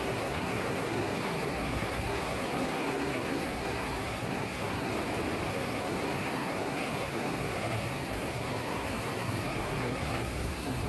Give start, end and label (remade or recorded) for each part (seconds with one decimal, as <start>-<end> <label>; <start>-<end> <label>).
0.0-4.9 remade; 4.9-5.5 recorded; 5.5-10.9 remade